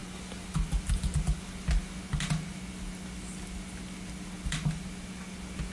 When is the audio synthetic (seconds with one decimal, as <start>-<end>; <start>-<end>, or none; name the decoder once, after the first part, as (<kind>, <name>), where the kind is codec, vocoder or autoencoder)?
none